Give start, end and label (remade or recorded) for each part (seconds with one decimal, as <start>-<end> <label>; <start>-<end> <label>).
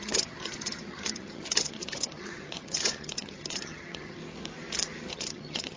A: 0.0-4.2 remade; 4.2-5.1 recorded; 5.1-5.8 remade